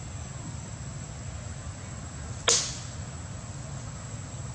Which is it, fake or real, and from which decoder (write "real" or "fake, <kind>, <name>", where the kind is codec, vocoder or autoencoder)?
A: real